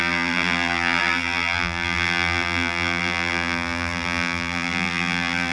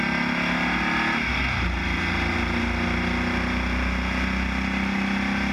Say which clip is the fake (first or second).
first